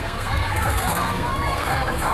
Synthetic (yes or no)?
yes